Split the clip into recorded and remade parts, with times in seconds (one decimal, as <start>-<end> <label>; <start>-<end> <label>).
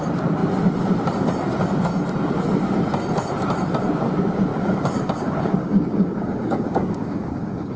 0.0-4.5 recorded; 4.5-7.8 remade